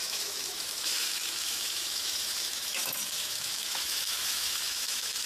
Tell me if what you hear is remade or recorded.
remade